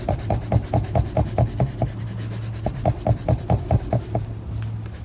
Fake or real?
real